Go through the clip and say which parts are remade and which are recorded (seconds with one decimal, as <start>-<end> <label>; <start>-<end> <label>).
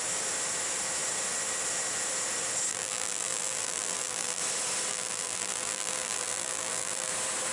0.0-2.7 recorded; 2.7-4.4 remade; 4.4-4.9 recorded; 4.9-7.1 remade; 7.1-7.5 recorded